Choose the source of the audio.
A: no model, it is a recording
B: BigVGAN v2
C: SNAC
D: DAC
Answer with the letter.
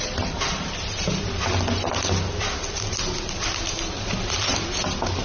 A